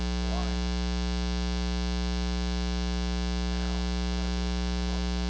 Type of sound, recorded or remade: recorded